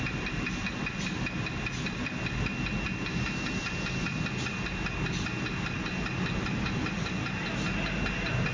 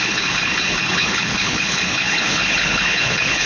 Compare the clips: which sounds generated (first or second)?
second